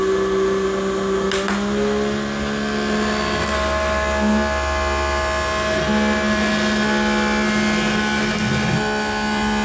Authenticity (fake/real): real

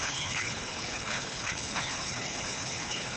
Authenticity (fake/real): fake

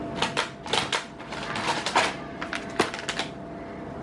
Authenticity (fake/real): real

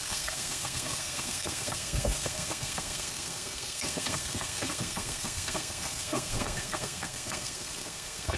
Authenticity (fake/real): fake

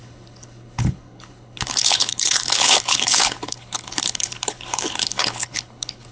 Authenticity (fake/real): fake